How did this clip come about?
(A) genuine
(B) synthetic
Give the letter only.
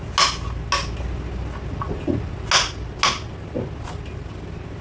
A